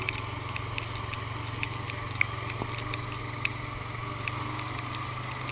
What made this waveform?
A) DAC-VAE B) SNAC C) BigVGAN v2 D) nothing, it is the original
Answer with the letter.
D